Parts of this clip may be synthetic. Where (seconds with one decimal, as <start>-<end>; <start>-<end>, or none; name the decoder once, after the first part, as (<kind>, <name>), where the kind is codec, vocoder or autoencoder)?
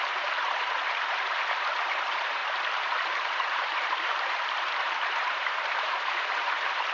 0.0-2.4 (vocoder, BigVGAN v2); 3.3-6.9